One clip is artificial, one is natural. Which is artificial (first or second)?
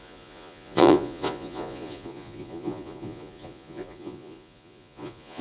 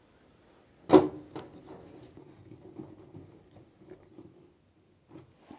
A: first